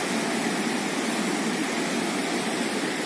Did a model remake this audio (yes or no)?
no